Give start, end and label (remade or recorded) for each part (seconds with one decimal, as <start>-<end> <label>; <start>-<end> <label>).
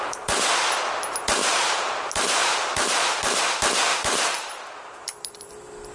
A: 0.0-1.4 recorded; 1.4-3.4 remade; 3.4-3.9 recorded; 3.9-5.5 remade; 5.5-5.9 recorded